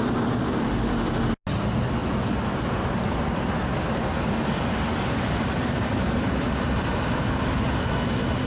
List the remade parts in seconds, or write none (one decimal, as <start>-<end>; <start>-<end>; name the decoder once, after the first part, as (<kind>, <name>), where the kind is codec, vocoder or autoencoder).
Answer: none

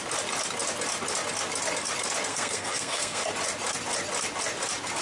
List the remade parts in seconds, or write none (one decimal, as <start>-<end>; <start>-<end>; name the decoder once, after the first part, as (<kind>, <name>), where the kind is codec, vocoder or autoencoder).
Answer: 2.3-3.2 (codec, SNAC)

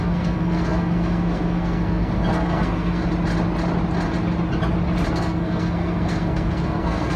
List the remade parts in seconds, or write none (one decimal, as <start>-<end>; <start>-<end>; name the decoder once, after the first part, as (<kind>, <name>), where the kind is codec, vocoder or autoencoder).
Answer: 0.0-3.0 (codec, SNAC); 5.1-7.2

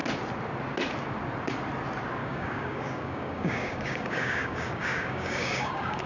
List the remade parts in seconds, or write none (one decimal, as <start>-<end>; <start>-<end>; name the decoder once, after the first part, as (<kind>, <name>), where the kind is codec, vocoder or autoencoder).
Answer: 2.2-6.1 (codec, DAC)

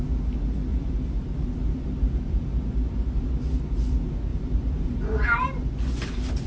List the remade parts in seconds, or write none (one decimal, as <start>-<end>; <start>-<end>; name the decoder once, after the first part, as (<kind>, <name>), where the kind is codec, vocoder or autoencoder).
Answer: 0.7-3.2 (vocoder, BigVGAN v2); 4.3-5.5

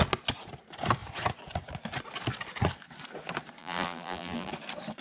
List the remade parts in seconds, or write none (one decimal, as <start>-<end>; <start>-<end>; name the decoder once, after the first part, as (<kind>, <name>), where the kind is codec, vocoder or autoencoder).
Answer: 3.6-4.5 (vocoder, BigVGAN v2)